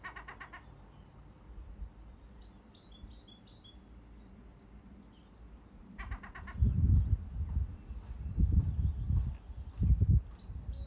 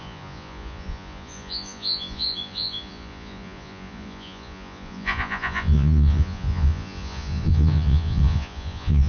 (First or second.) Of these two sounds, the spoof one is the second